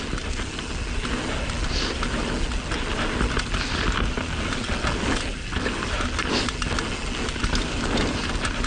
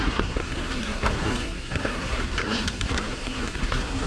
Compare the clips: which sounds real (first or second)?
first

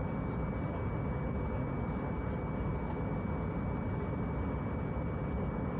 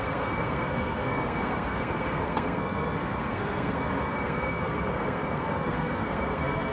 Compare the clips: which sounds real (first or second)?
first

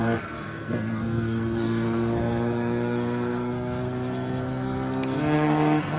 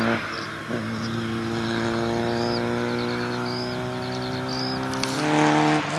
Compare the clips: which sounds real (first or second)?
second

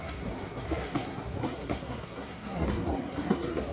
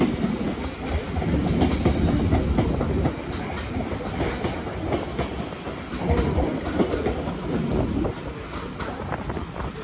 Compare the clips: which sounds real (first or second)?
second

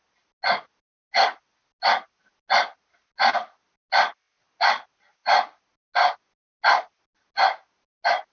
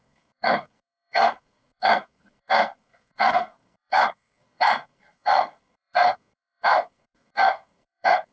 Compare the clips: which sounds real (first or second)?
first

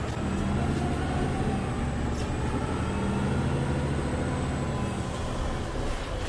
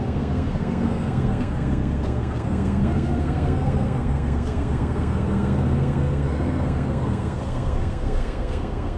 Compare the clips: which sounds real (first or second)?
first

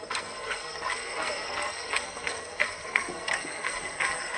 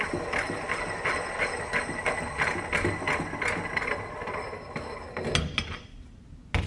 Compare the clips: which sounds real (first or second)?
second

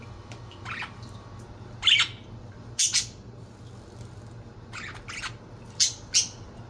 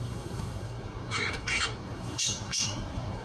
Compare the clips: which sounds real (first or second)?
first